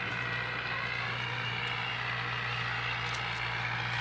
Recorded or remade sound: recorded